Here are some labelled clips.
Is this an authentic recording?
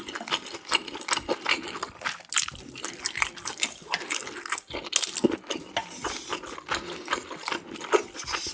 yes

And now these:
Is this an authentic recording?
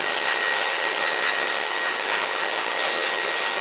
no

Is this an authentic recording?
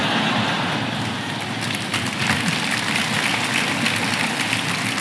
yes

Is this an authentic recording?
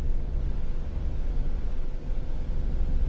yes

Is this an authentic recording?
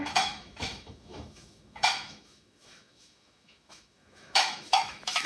no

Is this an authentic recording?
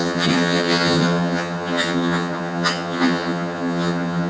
no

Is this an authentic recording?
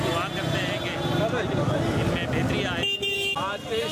yes